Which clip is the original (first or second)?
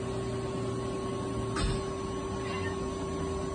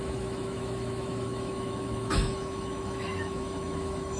first